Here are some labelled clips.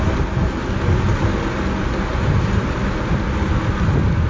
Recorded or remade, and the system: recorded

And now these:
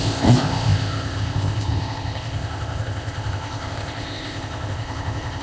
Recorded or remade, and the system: remade, codec, ZipCodec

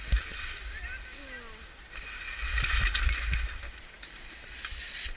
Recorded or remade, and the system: recorded